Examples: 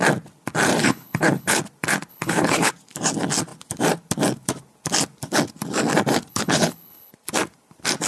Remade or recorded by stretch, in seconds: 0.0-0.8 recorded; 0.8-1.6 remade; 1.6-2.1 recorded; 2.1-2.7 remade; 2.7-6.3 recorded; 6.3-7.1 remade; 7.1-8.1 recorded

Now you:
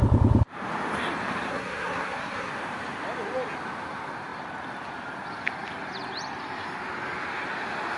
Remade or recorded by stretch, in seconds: 0.0-1.5 recorded; 1.5-2.5 remade; 2.5-8.0 recorded

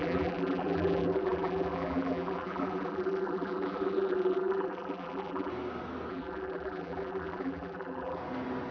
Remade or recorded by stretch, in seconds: 0.0-5.5 remade; 5.5-6.1 recorded; 6.1-8.2 remade; 8.2-8.7 recorded

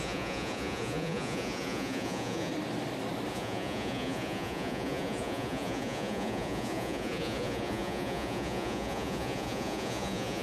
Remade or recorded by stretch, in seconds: 0.0-2.5 remade; 2.5-3.3 recorded; 3.3-10.4 remade

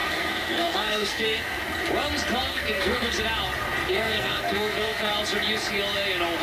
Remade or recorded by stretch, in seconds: 0.0-1.6 remade; 1.6-2.5 recorded; 2.5-3.2 remade; 3.2-3.9 recorded; 3.9-5.1 remade; 5.1-6.4 recorded

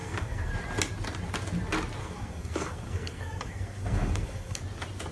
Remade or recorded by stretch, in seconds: 0.0-0.5 remade; 0.5-2.0 recorded; 2.0-4.6 remade; 4.6-5.1 recorded

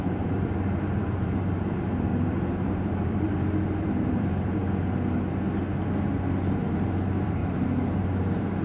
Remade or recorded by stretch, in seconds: 0.0-4.6 remade; 4.6-6.5 recorded; 6.5-7.4 remade; 7.4-8.0 recorded; 8.0-8.6 remade